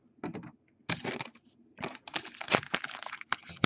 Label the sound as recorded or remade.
recorded